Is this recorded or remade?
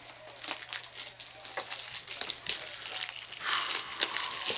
recorded